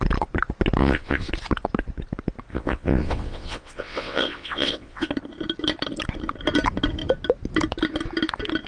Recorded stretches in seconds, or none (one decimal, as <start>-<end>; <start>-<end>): 0.0-0.8; 1.3-2.5; 5.1-8.7